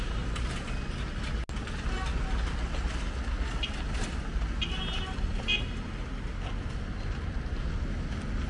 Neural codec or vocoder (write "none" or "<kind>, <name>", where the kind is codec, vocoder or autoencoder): none